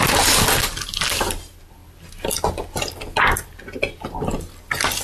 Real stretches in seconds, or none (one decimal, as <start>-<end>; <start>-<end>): 0.0-5.0